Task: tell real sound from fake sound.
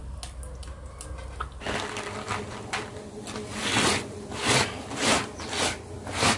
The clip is real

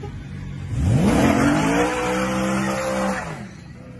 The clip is real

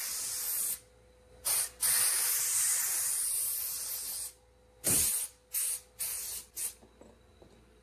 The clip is real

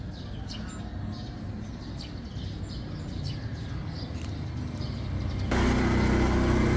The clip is real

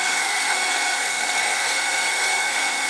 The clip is fake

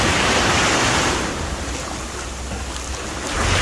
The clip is real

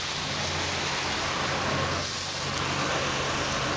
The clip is real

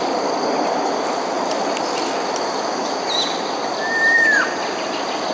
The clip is real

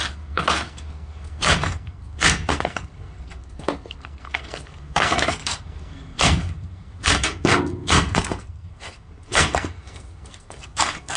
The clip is fake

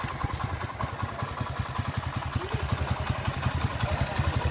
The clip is real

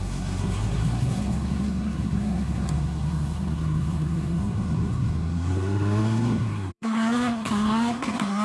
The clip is fake